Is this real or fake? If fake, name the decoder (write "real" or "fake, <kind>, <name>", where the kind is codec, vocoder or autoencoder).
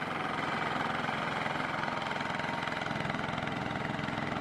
real